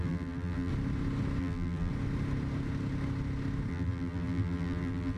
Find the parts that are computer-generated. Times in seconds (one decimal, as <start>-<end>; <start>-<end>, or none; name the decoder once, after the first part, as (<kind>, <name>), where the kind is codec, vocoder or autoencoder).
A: 0.0-0.7 (vocoder, BigVGAN v2); 1.4-1.9; 3.7-5.2